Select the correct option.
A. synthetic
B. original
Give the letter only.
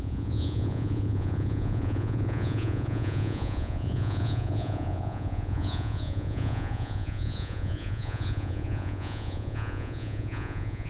A